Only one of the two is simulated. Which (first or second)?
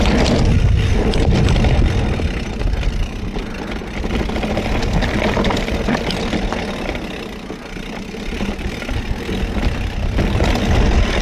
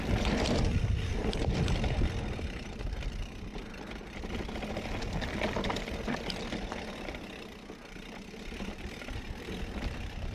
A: second